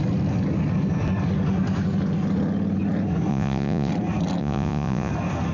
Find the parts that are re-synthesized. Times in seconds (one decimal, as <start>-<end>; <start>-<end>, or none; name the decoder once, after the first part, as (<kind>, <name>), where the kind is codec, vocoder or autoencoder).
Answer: 3.3-3.9 (vocoder, Vocos); 4.4-5.1

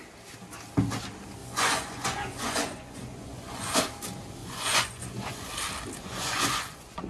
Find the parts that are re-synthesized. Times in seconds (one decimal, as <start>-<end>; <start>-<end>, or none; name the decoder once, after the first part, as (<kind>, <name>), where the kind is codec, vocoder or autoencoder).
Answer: 1.4-3.8 (vocoder, Vocos); 4.4-5.5; 6.0-7.1

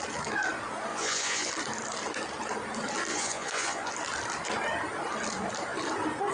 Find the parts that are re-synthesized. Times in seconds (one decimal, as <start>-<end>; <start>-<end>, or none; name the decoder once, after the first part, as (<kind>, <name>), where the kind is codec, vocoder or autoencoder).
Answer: 0.9-1.5 (vocoder, Vocos); 3.1-3.9

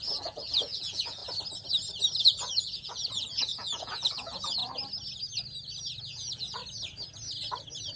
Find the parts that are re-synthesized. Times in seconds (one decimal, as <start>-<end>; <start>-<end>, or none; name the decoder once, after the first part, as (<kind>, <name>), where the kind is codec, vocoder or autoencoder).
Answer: 0.0-1.2 (vocoder, Vocos); 2.2-4.6; 6.0-6.6

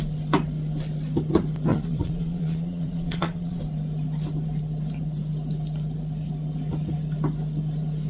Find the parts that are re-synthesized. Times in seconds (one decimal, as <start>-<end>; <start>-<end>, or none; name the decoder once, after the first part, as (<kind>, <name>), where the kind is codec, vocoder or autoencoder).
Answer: 1.7-3.6 (vocoder, Vocos)

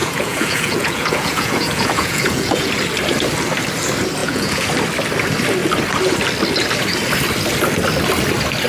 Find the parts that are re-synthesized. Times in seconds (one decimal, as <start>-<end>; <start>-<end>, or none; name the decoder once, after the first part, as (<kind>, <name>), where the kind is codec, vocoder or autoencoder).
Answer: 0.0-2.7 (vocoder, Vocos); 4.2-4.7